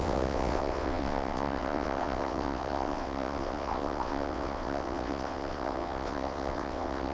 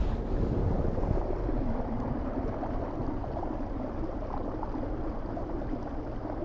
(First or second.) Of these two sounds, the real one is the second